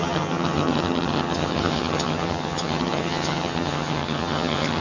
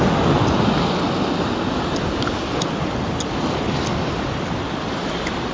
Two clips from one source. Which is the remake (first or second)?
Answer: first